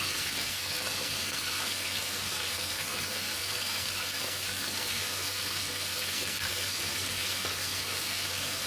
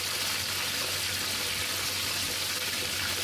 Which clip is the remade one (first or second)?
first